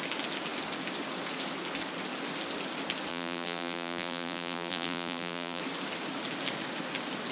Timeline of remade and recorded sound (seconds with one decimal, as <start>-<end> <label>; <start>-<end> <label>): 0.0-3.1 recorded; 3.1-5.6 remade; 5.6-7.3 recorded